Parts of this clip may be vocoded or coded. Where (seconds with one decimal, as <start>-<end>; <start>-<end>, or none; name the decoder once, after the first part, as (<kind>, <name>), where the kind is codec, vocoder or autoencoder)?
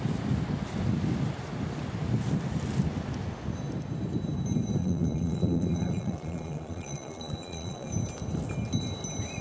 4.8-7.9 (vocoder, Vocos)